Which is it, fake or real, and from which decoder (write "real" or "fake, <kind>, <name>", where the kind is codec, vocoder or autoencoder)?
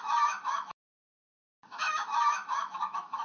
fake, autoencoder, DAC-VAE